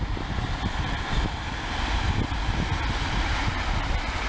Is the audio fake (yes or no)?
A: no